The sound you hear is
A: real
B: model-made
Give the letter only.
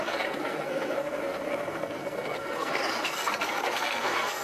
B